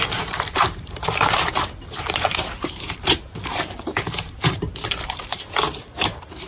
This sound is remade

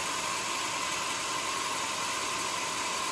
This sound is remade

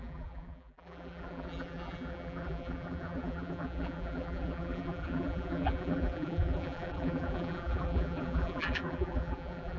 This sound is remade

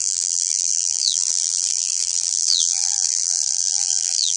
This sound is remade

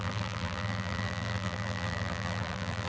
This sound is remade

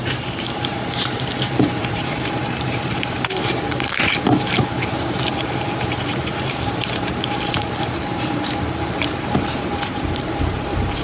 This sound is remade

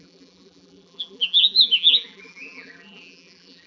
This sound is remade